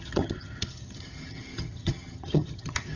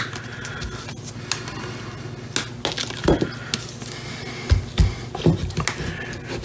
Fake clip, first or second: first